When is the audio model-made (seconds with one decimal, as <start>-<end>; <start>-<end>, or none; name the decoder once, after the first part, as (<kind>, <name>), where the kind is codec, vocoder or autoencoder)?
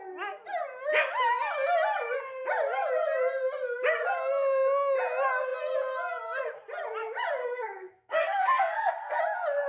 7.4-9.2 (codec, SNAC)